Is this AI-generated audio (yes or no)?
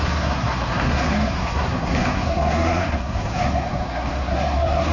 yes